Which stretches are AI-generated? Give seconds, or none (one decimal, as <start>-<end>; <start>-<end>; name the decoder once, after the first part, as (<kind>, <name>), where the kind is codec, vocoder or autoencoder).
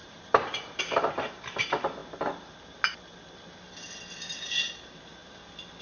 0.0-0.8 (vocoder, BigVGAN v2)